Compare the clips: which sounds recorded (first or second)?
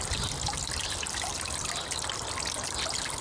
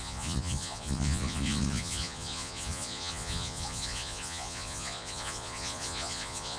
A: first